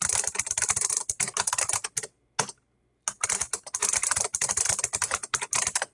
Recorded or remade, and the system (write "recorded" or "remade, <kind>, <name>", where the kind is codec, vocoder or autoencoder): recorded